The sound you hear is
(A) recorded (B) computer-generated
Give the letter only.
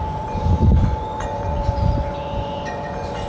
B